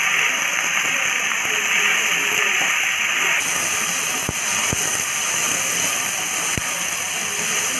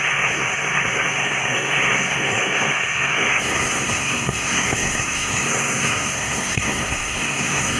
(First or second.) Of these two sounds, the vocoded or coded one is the second